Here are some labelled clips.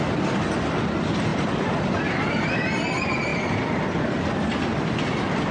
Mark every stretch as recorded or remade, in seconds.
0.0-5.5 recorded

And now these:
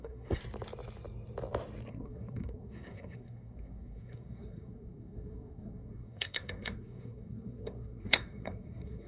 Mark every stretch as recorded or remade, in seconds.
0.0-0.4 remade; 0.4-1.9 recorded; 1.9-9.1 remade

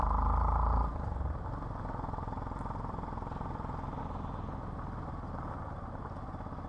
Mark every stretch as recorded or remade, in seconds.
0.0-6.7 recorded

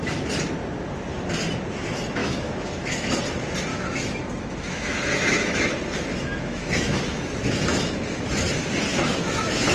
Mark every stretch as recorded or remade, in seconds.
0.0-2.2 recorded; 2.2-3.2 remade; 3.2-3.7 recorded; 3.7-8.2 remade; 8.2-8.9 recorded; 8.9-9.7 remade

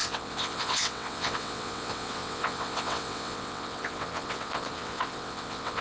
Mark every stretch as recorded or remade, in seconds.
0.0-5.8 remade